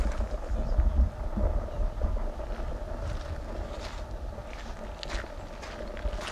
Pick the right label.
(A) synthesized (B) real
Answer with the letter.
B